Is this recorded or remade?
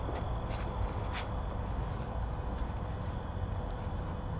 recorded